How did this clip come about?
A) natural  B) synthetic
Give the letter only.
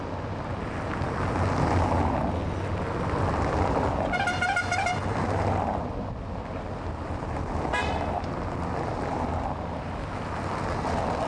A